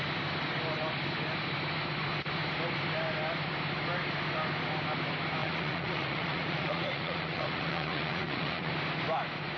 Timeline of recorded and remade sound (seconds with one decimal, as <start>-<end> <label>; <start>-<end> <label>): 0.0-5.4 recorded; 5.4-8.7 remade; 8.7-9.6 recorded

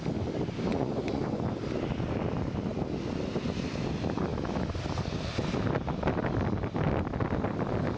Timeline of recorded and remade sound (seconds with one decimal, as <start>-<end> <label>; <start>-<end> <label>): 0.0-0.7 recorded; 0.7-1.4 remade; 1.4-8.0 recorded

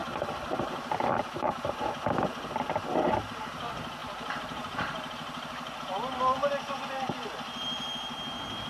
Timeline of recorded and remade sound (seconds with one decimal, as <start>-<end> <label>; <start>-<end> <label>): 0.0-1.7 remade; 1.7-4.0 recorded; 4.0-5.8 remade; 5.8-8.7 recorded

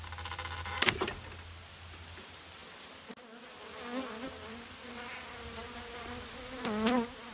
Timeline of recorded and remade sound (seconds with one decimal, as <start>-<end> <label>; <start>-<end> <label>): 0.0-7.3 recorded

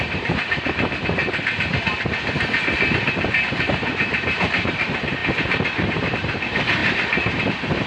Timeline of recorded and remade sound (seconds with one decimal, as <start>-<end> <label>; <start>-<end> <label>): 0.0-1.2 remade; 1.2-3.5 recorded; 3.5-7.9 remade

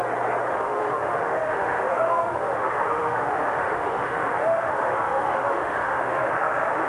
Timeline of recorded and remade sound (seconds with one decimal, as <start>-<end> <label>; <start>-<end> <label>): 0.0-0.5 recorded; 0.5-6.9 remade

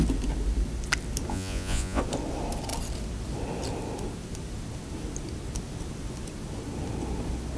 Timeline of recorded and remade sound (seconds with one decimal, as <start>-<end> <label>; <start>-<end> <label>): 0.0-1.3 recorded; 1.3-2.0 remade; 2.0-7.6 recorded